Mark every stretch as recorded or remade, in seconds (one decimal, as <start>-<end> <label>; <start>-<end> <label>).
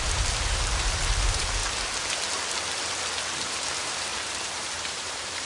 0.0-1.6 remade; 1.6-3.3 recorded; 3.3-5.5 remade